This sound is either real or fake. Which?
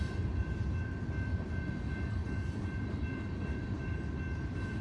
fake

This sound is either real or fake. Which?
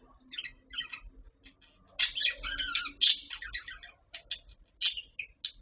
real